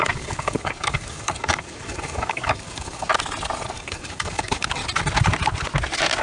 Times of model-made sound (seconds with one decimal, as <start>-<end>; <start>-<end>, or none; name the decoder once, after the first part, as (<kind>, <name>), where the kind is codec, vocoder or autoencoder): 0.0-3.1 (codec, DAC); 3.7-4.8